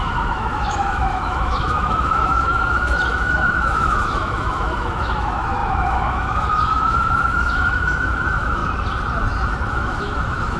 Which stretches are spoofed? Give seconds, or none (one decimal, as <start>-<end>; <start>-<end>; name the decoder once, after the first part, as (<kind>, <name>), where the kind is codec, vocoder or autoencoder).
0.0-8.6 (autoencoder, DAC-VAE); 9.7-10.6